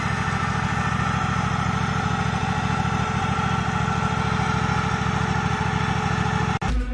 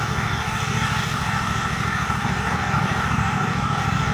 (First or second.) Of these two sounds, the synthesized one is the second